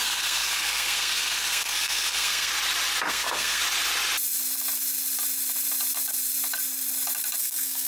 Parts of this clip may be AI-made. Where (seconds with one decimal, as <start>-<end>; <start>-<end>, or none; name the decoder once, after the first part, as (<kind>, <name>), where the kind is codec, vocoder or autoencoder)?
0.0-2.5 (codec, SNAC); 3.1-3.6; 7.4-7.9